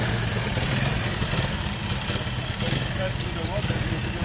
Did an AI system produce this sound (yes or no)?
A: no